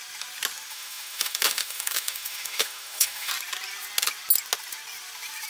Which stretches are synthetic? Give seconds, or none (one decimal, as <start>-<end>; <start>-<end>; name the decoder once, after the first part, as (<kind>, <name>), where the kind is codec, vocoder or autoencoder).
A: 0.7-3.3 (autoencoder, DAC-VAE)